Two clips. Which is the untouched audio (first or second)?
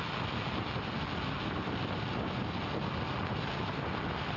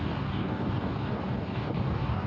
first